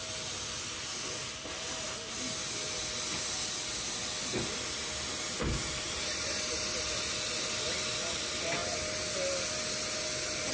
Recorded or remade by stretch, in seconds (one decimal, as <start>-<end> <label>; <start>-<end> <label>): 0.0-10.5 recorded